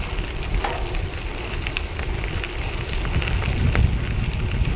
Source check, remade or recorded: recorded